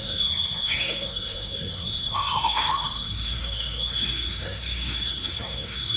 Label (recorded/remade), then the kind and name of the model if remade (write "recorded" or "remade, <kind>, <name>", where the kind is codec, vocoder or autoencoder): remade, codec, SNAC